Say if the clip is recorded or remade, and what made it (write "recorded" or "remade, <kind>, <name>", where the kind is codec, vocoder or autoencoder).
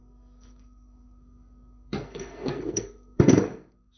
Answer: remade, codec, SNAC